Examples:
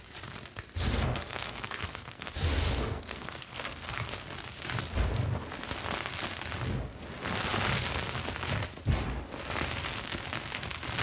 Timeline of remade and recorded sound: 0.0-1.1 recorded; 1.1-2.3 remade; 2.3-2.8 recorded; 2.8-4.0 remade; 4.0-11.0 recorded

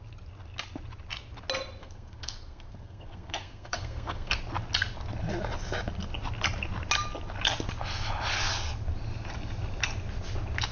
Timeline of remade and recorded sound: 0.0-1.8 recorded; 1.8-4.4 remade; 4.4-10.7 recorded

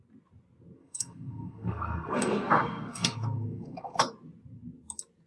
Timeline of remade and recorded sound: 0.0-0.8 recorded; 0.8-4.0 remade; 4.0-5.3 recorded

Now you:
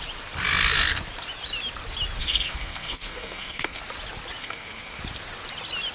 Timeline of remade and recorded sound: 0.0-2.2 recorded; 2.2-3.8 remade; 3.8-4.4 recorded; 4.4-5.0 remade; 5.0-5.9 recorded

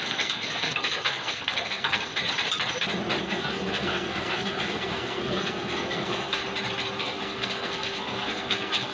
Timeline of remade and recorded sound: 0.0-2.1 remade; 2.1-3.2 recorded; 3.2-6.4 remade; 6.4-7.0 recorded; 7.0-8.9 remade